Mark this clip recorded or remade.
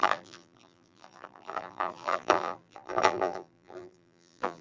remade